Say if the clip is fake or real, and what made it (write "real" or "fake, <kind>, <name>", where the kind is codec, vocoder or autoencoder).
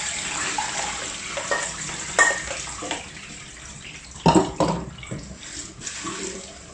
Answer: fake, vocoder, BigVGAN v2